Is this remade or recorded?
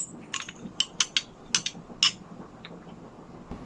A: recorded